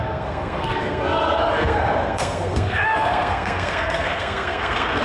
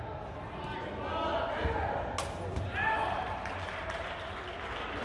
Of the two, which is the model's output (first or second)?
first